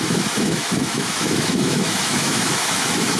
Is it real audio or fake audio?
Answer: fake